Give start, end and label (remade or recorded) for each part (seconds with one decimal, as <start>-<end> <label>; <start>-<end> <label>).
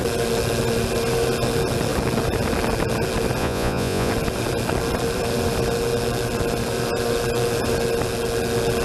0.0-3.4 recorded; 3.4-4.1 remade; 4.1-8.8 recorded